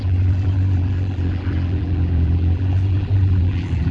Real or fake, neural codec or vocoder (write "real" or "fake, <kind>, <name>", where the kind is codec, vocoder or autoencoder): fake, vocoder, BigVGAN v2